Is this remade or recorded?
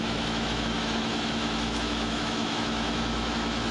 remade